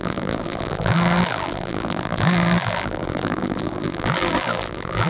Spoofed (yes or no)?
yes